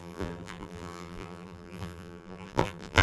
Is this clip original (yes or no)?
no